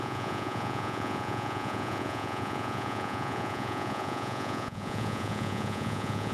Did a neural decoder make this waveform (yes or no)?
yes